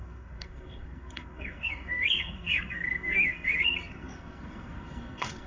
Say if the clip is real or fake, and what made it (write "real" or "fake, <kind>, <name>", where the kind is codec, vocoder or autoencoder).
fake, codec, SNAC